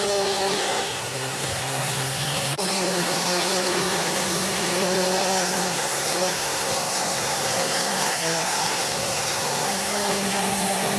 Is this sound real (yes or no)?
no